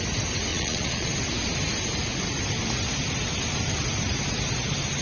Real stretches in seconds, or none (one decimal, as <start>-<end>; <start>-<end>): 0.0-0.5; 1.1-5.0